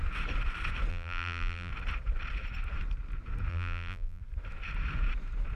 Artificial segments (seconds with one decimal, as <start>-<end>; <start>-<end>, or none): 0.9-1.7; 3.5-4.2